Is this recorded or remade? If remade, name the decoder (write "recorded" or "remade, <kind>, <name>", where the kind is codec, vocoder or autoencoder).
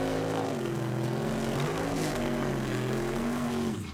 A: remade, codec, SNAC